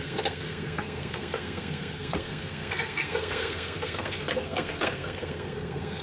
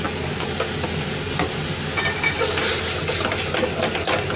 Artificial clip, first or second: first